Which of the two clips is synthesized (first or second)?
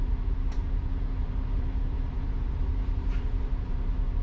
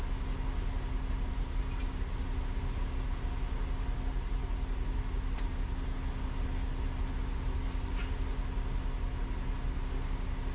first